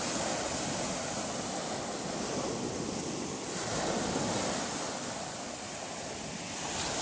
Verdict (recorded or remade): recorded